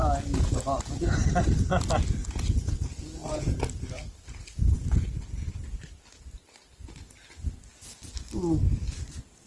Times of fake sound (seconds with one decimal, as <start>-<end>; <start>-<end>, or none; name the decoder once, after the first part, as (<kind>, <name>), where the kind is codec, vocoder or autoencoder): none